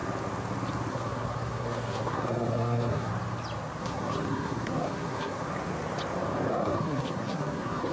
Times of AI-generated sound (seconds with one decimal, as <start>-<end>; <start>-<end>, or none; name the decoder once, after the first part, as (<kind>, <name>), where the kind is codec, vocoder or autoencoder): 0.9-3.1 (codec, SNAC); 3.8-5.5; 6.5-7.9